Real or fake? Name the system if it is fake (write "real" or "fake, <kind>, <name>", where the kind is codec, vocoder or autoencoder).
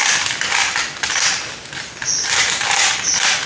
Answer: real